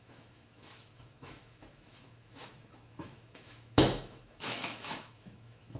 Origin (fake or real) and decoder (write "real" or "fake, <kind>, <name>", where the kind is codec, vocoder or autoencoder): fake, autoencoder, DAC-VAE